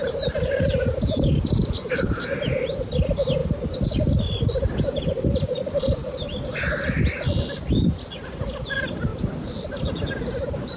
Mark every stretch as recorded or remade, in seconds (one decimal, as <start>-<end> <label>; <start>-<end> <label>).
0.0-3.4 remade; 3.4-4.8 recorded; 4.8-6.0 remade; 6.0-6.8 recorded; 6.8-9.1 remade; 9.1-10.8 recorded